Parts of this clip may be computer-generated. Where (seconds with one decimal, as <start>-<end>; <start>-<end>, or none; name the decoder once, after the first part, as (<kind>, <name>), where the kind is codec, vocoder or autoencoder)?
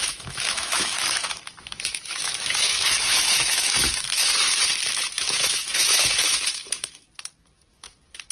0.0-4.3 (autoencoder, DAC-VAE); 4.9-8.3